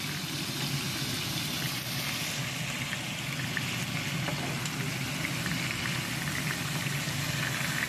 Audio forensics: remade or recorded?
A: recorded